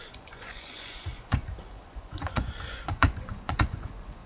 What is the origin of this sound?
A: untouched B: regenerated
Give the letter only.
B